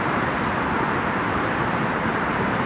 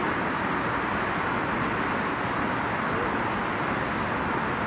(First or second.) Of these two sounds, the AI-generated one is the first